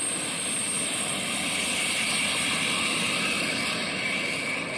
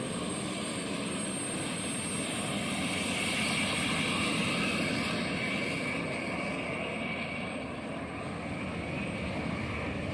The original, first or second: second